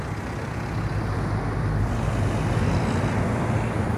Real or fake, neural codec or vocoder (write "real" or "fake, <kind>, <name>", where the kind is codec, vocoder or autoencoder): real